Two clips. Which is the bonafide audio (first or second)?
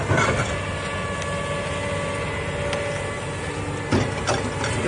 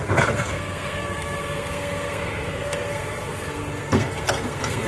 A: first